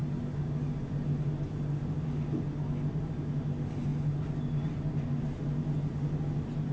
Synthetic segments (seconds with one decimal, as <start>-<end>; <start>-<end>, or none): none